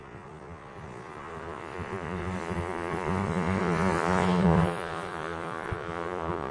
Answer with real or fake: fake